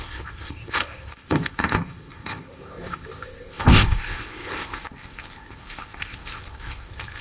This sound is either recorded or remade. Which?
remade